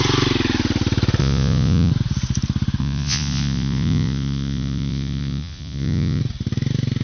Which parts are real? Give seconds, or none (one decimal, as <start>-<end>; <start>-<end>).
0.0-1.2; 1.9-2.8; 6.2-7.0